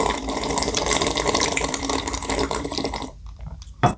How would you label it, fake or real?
fake